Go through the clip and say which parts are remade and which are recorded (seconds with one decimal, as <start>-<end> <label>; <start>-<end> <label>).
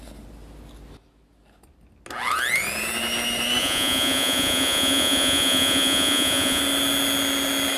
0.0-3.6 recorded; 3.6-6.6 remade; 6.6-7.8 recorded